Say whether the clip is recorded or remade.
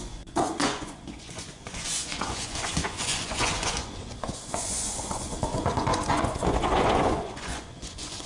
remade